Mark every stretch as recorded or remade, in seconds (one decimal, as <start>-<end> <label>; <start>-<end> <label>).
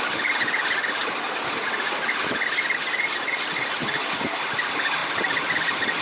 0.0-5.0 recorded; 5.0-6.0 remade